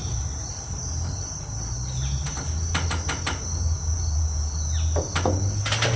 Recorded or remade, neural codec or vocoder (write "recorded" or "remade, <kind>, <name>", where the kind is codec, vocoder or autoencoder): recorded